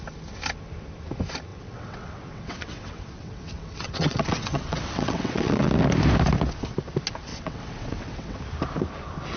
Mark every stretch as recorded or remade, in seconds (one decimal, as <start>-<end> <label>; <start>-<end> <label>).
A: 0.0-1.5 recorded; 1.5-5.7 remade; 5.7-7.3 recorded; 7.3-8.4 remade; 8.4-9.4 recorded